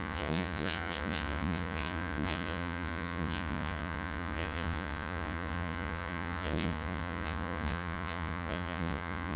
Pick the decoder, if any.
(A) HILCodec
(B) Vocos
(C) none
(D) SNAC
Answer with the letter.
B